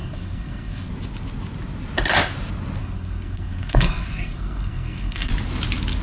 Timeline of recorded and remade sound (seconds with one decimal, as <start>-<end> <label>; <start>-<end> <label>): 0.0-0.9 remade; 0.9-2.8 recorded; 2.8-5.3 remade; 5.3-6.0 recorded